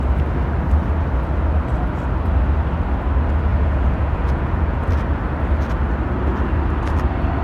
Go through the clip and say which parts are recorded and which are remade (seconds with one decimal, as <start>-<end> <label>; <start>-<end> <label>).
0.0-3.5 recorded; 3.5-4.9 remade; 4.9-7.4 recorded